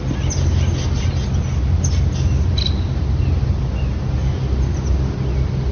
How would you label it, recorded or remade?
recorded